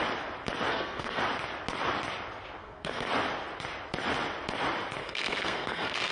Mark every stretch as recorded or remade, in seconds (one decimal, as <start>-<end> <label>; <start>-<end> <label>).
0.0-0.7 recorded; 0.7-1.2 remade; 1.2-2.6 recorded; 2.6-3.1 remade; 3.1-5.0 recorded; 5.0-6.1 remade

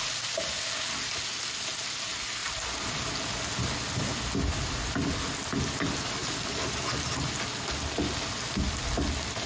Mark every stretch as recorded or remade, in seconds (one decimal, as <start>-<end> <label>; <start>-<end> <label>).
0.0-9.5 recorded

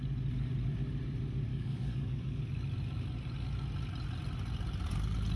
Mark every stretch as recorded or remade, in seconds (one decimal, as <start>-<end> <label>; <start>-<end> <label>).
0.0-1.5 recorded; 1.5-2.4 remade; 2.4-5.4 recorded

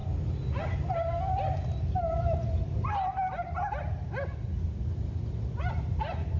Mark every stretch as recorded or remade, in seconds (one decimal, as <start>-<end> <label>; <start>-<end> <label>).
0.0-6.4 recorded